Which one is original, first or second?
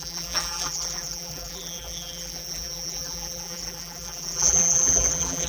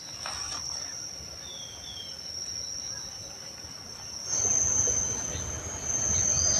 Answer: second